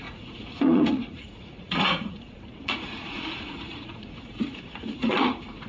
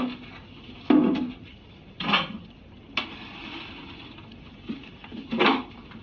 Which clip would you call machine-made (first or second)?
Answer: first